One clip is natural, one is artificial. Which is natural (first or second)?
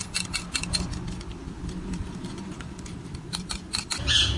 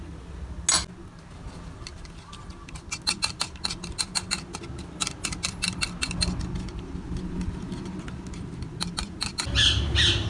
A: second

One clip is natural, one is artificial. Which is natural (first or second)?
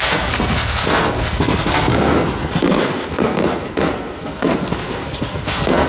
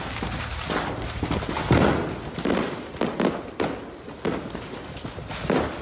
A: second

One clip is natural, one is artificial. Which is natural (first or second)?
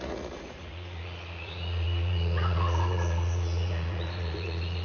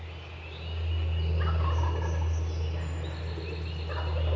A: second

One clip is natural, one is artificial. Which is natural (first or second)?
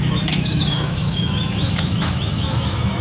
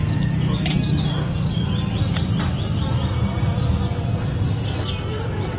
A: second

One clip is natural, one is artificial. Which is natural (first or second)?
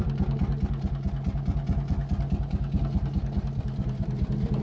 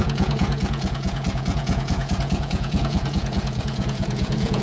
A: first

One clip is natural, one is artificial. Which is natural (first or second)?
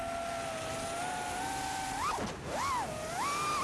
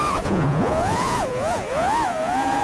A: first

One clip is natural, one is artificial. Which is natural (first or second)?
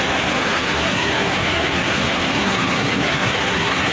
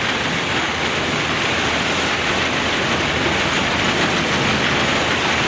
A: second